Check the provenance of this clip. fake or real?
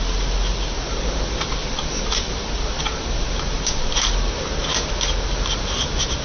real